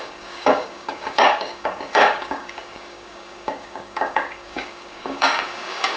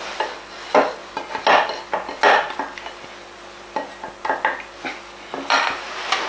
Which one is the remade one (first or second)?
first